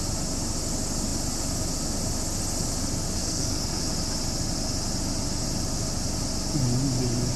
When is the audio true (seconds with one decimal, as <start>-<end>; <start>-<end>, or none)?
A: 0.0-3.2; 3.8-7.4